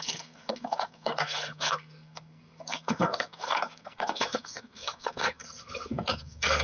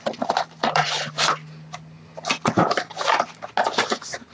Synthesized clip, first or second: first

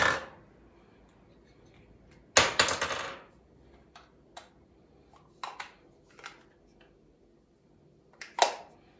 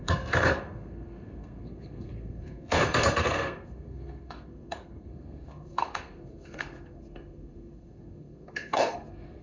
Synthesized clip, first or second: second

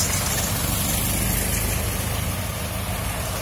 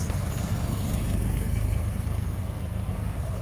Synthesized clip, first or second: second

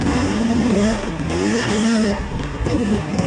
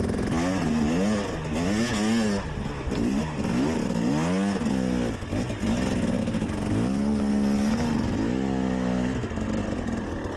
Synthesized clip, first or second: first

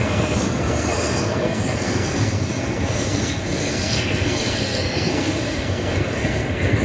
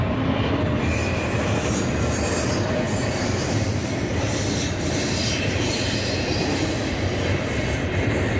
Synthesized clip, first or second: first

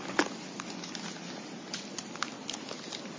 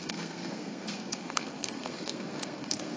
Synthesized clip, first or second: second